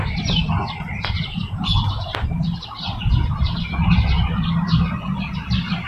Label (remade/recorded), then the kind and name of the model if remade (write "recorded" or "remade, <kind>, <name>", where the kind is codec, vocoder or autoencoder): recorded